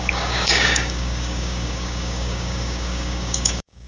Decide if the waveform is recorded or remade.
remade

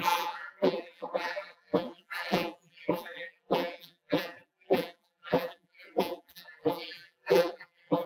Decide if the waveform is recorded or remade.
remade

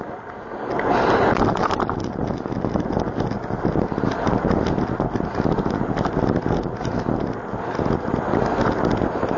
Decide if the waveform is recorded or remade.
recorded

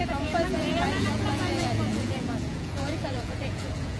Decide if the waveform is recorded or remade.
remade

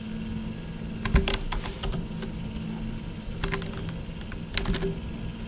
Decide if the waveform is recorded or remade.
recorded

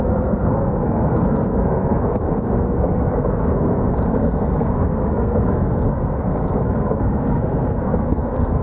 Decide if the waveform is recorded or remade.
remade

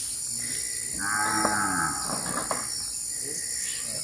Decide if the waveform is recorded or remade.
recorded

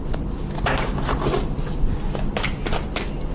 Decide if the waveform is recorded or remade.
recorded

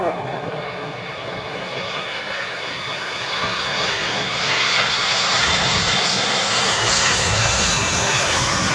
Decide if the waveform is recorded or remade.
remade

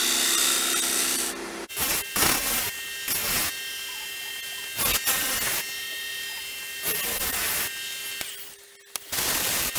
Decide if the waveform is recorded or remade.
recorded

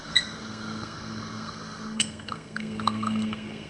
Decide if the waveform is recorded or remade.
remade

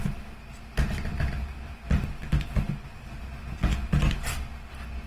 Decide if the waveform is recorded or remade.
recorded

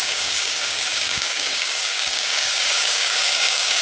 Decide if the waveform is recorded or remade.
remade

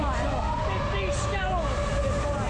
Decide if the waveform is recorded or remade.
recorded